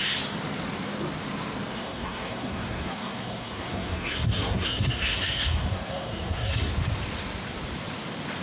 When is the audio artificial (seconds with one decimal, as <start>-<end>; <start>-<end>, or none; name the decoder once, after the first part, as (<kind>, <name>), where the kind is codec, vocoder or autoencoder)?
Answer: 1.7-6.7 (codec, SNAC)